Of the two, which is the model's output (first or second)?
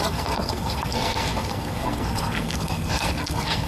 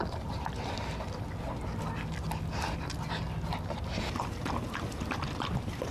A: first